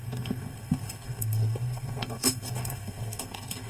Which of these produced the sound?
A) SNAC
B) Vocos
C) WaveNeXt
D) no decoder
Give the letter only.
A